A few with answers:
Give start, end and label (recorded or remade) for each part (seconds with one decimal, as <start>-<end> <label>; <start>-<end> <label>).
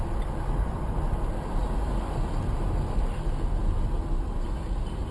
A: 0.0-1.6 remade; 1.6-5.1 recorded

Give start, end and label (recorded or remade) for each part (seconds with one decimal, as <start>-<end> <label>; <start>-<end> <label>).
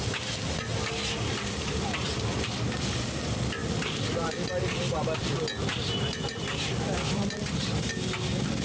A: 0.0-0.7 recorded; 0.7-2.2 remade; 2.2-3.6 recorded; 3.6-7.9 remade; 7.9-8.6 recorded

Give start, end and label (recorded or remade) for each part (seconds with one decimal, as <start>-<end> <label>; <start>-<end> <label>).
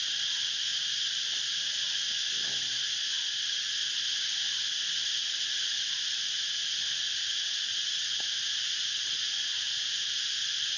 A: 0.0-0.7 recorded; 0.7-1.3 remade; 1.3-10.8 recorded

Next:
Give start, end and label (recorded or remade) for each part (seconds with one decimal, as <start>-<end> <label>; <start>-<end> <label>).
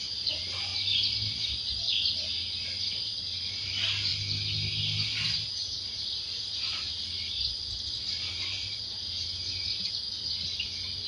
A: 0.0-11.1 recorded